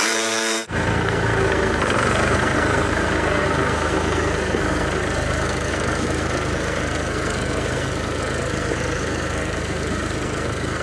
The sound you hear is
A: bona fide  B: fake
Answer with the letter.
B